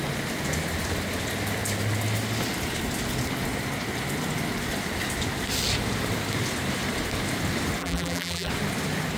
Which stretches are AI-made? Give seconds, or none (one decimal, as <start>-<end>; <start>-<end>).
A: 7.8-8.5